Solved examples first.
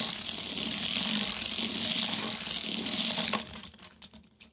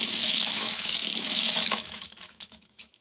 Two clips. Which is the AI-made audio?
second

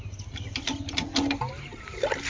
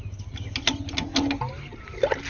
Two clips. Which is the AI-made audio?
first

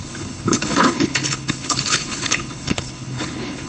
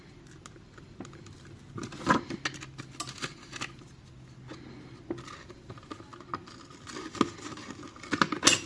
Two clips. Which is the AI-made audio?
first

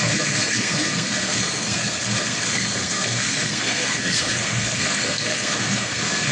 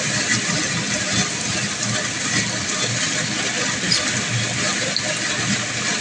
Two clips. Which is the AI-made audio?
first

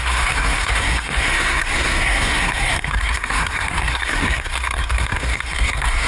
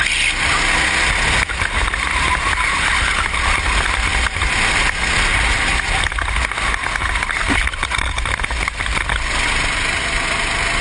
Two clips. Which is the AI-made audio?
first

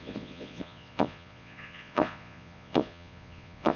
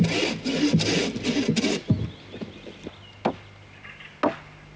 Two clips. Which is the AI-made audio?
first